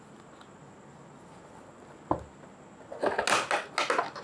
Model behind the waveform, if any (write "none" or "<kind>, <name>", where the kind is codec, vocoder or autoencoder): none